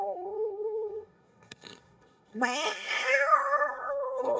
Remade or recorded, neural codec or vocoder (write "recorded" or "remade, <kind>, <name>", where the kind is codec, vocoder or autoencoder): remade, codec, SNAC